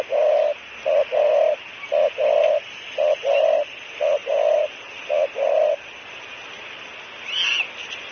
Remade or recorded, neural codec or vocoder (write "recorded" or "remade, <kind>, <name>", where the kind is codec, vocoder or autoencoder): recorded